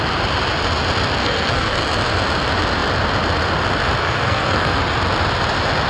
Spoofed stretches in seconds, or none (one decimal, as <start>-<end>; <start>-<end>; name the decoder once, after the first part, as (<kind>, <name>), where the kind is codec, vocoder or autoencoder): 1.2-1.8 (codec, SNAC); 4.0-4.8